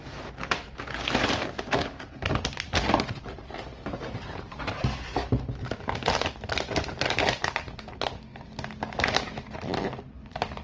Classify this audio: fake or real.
real